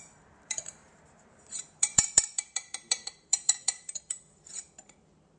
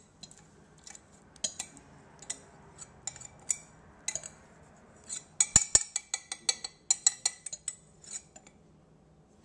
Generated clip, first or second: first